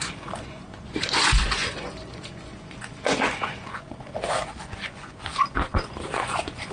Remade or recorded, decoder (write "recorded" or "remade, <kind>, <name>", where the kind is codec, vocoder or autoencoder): remade, vocoder, Vocos